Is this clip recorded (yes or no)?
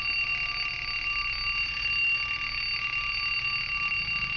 yes